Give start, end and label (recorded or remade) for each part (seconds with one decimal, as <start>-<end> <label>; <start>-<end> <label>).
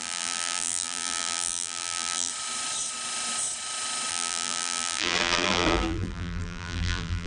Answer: 0.0-2.3 remade; 2.3-4.1 recorded; 4.1-7.3 remade